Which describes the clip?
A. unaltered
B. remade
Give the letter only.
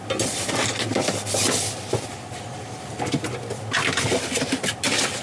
A